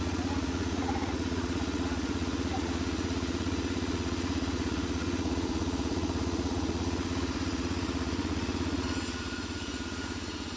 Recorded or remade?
remade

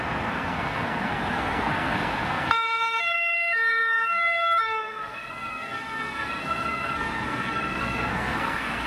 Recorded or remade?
remade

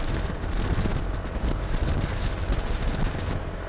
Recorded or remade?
recorded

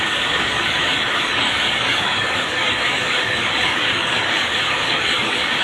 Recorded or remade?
remade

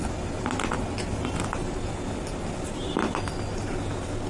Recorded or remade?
recorded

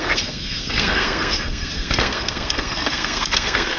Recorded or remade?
remade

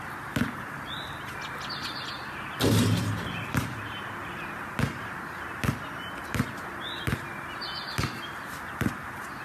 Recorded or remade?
recorded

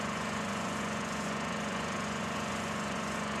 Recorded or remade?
remade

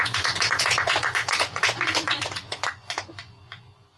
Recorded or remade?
remade